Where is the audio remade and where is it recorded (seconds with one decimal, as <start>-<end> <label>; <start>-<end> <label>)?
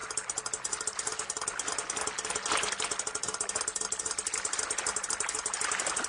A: 0.0-6.1 recorded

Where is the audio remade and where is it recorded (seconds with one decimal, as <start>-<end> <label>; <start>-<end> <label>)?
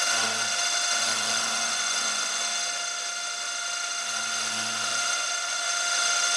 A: 0.0-1.1 recorded; 1.1-2.4 remade; 2.4-4.9 recorded; 4.9-5.7 remade; 5.7-6.4 recorded